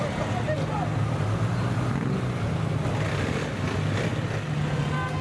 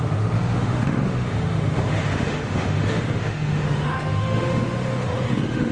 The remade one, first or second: second